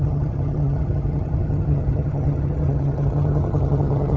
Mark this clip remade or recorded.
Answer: remade